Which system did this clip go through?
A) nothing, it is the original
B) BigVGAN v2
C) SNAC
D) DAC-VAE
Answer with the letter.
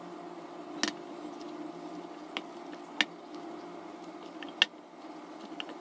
A